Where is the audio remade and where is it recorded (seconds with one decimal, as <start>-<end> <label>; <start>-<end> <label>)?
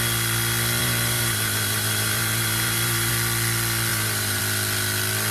0.0-0.8 recorded; 0.8-3.1 remade; 3.1-3.9 recorded; 3.9-4.4 remade; 4.4-5.3 recorded